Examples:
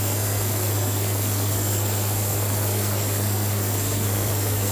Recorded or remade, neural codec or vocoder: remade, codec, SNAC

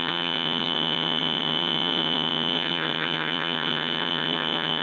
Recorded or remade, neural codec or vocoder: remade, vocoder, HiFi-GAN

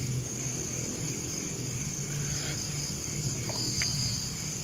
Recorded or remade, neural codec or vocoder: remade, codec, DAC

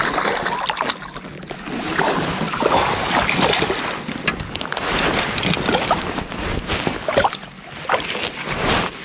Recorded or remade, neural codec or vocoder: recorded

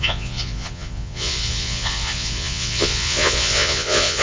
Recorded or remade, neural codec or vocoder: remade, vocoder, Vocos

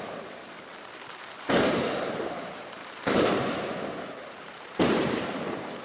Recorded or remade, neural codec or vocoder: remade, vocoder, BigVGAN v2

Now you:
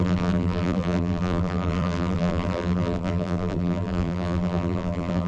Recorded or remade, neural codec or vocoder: remade, vocoder, BigVGAN v2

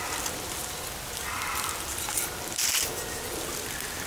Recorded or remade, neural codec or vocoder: recorded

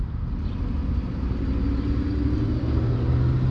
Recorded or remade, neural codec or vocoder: recorded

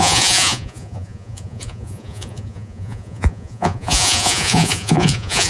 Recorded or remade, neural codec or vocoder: remade, vocoder, Vocos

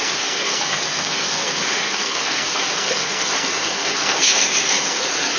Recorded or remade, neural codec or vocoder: remade, codec, SNAC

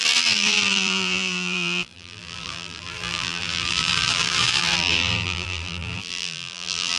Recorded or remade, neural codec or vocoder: remade, vocoder, BigVGAN v2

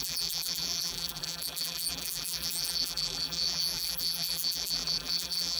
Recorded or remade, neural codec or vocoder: remade, vocoder, BigVGAN v2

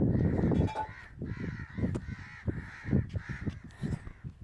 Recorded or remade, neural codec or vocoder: recorded